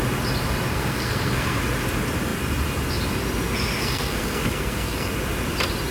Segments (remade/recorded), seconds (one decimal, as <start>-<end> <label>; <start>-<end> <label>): 0.0-0.7 recorded; 0.7-1.6 remade; 1.6-3.8 recorded; 3.8-5.1 remade; 5.1-5.9 recorded